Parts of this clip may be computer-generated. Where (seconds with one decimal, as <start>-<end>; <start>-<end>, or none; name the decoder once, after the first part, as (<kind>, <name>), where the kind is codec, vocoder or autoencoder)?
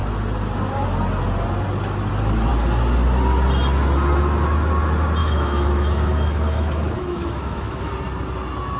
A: 5.2-7.9 (autoencoder, DAC-VAE)